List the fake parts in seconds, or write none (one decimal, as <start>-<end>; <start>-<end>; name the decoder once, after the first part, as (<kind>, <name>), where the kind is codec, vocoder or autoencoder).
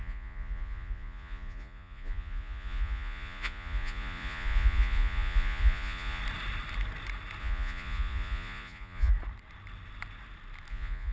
0.0-6.2 (vocoder, Vocos); 7.4-9.1; 10.7-11.1